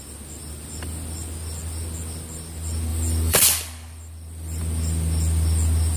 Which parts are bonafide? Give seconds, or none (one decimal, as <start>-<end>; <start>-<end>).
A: 0.0-2.9; 4.6-6.0